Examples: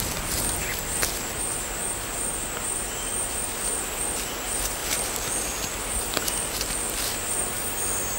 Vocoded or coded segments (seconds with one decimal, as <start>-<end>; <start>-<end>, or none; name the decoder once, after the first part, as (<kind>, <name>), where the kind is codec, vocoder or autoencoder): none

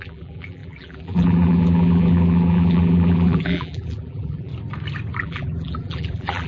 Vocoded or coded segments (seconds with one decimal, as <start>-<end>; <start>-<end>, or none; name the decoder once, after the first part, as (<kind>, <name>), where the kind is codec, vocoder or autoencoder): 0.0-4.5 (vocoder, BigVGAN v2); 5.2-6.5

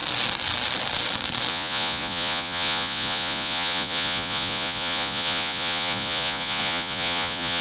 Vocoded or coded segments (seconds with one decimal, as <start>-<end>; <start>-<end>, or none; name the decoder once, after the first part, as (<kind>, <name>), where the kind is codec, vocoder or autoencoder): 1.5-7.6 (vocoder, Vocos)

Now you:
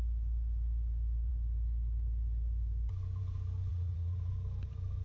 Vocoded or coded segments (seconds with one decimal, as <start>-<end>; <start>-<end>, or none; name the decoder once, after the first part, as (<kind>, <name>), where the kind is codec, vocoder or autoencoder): 3.7-4.3 (vocoder, Vocos)